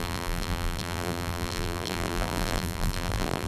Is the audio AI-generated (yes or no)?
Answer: yes